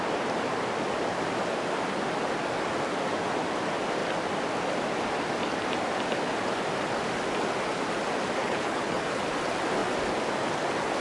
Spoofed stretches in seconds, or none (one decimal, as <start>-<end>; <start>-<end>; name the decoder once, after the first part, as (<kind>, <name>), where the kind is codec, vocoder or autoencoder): 8.4-9.2 (codec, HILCodec)